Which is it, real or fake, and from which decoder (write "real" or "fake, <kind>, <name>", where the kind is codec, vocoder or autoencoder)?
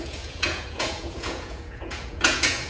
fake, vocoder, Vocos